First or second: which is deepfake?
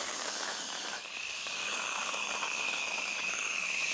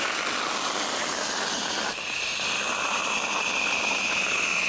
first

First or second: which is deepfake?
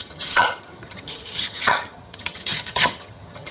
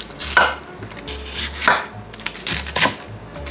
first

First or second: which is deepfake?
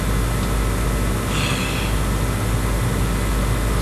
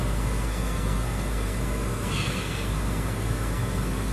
second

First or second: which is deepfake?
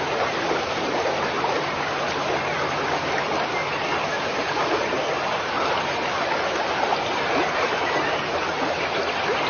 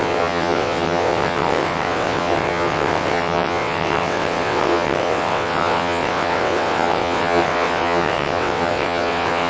second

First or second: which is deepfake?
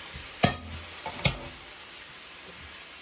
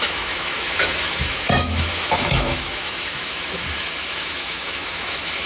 second